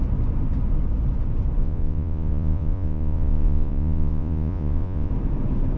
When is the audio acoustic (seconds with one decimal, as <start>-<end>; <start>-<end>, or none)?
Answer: 0.0-1.6; 5.1-5.8